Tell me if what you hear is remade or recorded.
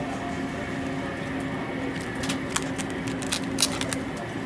recorded